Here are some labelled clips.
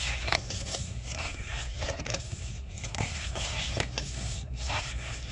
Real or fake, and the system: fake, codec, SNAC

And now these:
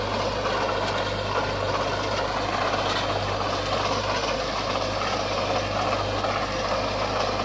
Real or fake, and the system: real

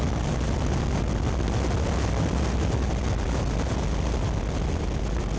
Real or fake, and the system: real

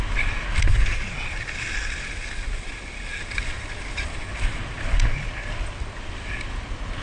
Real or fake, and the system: real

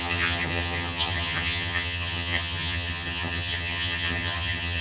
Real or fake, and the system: fake, vocoder, HiFi-GAN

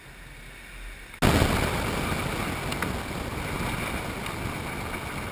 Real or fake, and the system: real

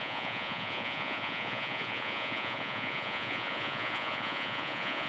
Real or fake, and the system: fake, vocoder, Vocos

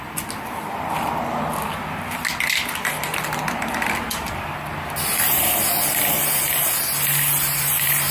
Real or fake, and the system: real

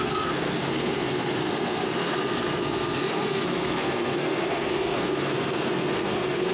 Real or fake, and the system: fake, codec, SNAC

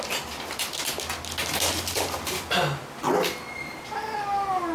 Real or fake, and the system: real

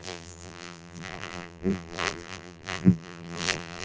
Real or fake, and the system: fake, vocoder, BigVGAN v2